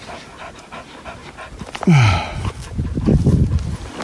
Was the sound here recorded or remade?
recorded